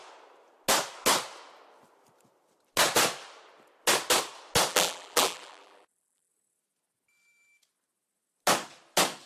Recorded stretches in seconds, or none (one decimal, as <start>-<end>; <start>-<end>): 0.0-4.7; 6.3-9.3